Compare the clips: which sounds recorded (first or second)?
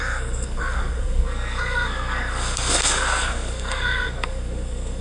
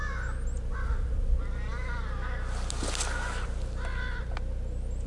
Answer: second